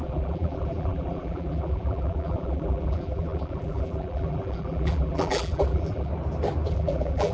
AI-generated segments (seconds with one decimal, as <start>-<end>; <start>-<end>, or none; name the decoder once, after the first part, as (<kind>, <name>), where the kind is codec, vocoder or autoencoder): 0.0-6.1 (vocoder, BigVGAN v2); 6.7-7.3